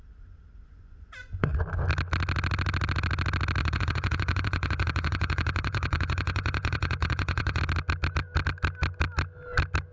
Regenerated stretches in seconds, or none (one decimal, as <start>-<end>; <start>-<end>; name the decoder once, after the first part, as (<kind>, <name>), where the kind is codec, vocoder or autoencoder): 0.6-1.6 (vocoder, Vocos); 3.6-7.6